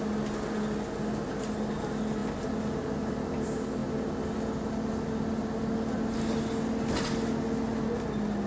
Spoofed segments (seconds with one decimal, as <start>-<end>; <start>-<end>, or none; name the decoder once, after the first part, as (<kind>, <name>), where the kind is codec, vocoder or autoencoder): none